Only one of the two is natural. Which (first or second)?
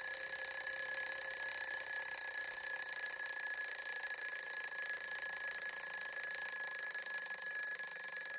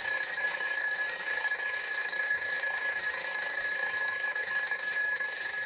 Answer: first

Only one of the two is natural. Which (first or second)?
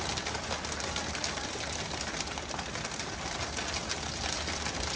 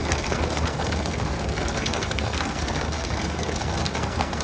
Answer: first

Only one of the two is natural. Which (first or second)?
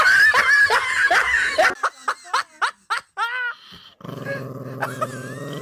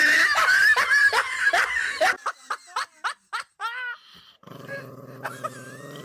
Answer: first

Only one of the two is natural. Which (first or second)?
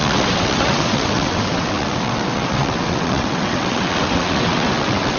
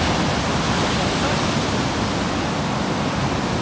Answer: second